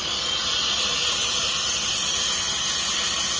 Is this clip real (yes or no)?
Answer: yes